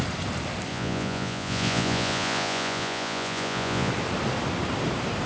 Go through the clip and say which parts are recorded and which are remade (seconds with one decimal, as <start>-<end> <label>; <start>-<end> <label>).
0.0-0.7 recorded; 0.7-3.9 remade; 3.9-5.3 recorded